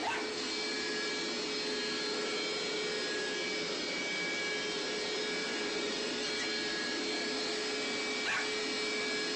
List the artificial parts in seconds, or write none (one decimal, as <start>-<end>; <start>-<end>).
5.4-6.1